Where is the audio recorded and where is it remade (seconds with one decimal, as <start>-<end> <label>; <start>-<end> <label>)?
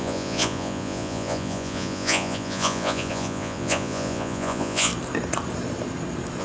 0.0-4.9 remade; 4.9-6.4 recorded